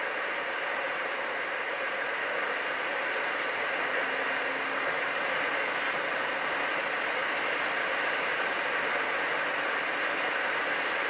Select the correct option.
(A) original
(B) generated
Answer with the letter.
A